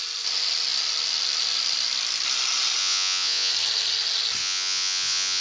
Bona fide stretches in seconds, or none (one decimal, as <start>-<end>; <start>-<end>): 0.0-2.8; 3.5-4.4